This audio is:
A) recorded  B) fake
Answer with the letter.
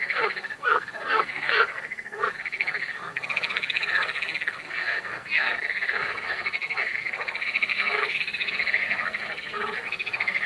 B